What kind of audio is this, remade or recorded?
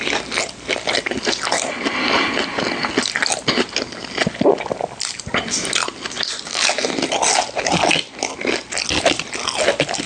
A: recorded